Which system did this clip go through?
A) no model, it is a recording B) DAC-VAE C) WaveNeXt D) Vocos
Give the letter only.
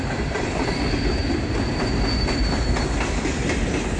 A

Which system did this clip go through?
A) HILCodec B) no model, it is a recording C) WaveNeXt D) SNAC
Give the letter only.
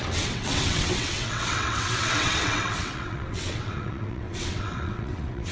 C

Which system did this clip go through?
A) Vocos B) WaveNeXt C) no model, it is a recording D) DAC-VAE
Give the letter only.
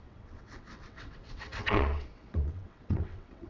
B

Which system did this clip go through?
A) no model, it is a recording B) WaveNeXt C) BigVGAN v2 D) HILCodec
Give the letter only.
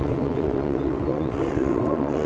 B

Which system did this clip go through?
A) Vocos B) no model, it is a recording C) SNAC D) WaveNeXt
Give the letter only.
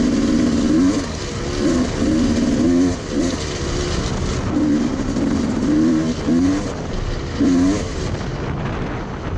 B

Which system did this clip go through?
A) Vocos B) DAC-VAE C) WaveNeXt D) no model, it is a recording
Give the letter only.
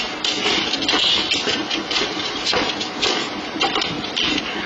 D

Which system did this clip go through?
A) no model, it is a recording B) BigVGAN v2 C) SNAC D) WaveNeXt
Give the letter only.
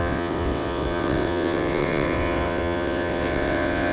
D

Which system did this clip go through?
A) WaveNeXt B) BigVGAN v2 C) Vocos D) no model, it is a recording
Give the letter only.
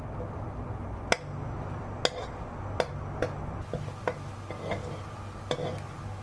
D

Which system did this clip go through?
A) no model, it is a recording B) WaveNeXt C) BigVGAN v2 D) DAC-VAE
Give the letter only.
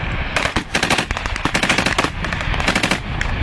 A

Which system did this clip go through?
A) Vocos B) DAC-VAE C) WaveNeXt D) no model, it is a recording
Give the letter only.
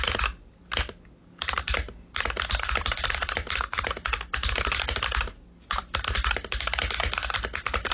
D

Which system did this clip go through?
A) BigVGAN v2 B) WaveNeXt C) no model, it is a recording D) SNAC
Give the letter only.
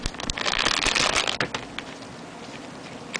C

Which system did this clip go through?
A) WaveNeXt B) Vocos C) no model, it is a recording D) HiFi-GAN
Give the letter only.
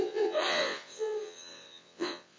A